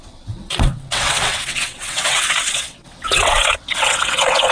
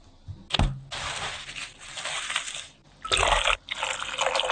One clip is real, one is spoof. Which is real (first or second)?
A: second